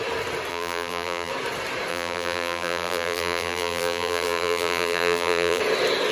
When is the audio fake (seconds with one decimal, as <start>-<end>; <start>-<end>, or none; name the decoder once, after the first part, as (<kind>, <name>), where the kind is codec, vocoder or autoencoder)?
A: 0.5-1.3 (vocoder, BigVGAN v2); 1.9-5.6